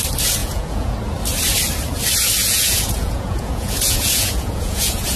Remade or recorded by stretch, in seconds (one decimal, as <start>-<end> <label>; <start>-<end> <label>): 0.0-0.4 recorded; 0.4-0.9 remade; 0.9-2.4 recorded; 2.4-5.2 remade